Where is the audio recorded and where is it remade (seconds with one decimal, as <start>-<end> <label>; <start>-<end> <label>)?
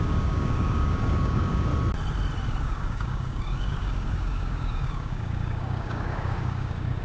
0.0-1.7 remade; 1.7-2.6 recorded; 2.6-7.0 remade